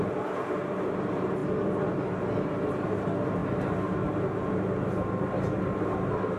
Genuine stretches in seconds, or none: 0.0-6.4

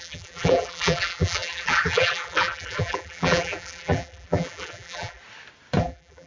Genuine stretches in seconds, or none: 5.2-5.8